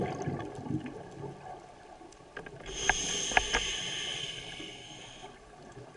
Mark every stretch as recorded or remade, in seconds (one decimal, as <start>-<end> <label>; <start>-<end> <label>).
0.0-4.2 recorded; 4.2-5.0 remade; 5.0-6.0 recorded